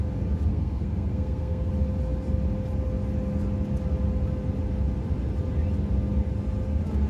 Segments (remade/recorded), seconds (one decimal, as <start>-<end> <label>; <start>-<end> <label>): 0.0-0.5 recorded; 0.5-1.7 remade; 1.7-7.1 recorded